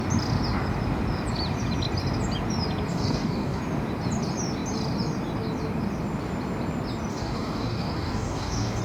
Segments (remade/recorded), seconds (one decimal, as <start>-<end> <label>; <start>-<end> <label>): 0.0-2.9 recorded; 2.9-3.6 remade; 3.6-7.1 recorded; 7.1-8.8 remade